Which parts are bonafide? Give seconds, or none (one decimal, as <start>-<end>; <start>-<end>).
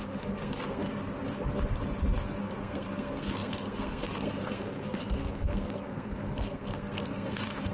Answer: 1.0-2.4